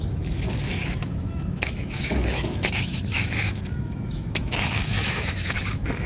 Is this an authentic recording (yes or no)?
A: no